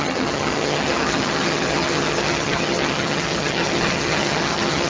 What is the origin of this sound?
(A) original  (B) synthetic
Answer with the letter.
B